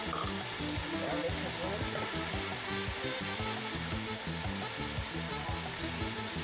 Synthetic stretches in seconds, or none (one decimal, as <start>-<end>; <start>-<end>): none